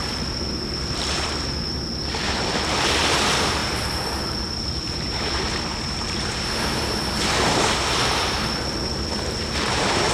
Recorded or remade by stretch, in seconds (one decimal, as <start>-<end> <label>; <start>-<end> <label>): 0.0-10.1 remade